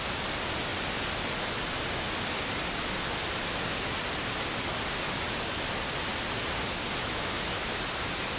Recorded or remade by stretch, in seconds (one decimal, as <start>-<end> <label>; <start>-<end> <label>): 0.0-7.0 recorded; 7.0-7.8 remade; 7.8-8.4 recorded